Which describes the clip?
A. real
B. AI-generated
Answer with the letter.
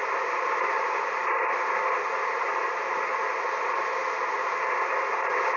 A